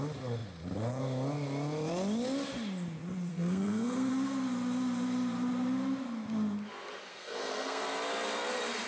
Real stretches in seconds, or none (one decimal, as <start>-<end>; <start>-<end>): 0.0-3.3; 4.1-7.1; 7.8-8.9